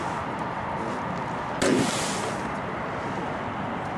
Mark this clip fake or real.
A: real